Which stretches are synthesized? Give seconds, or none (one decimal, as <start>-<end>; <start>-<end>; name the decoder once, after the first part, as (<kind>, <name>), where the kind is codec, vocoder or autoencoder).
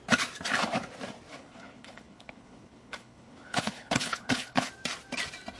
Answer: 1.3-4.7 (codec, HILCodec)